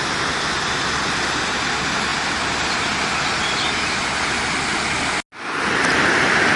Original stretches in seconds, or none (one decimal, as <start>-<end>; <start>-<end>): 0.0-6.6